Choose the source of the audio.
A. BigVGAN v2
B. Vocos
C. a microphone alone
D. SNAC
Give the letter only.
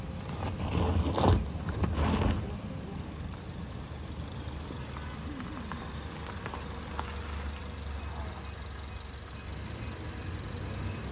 C